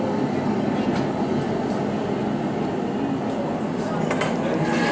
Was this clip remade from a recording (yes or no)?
no